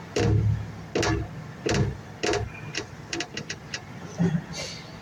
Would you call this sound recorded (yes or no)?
yes